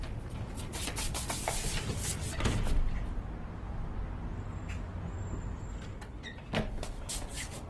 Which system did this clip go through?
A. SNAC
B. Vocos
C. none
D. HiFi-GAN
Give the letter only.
C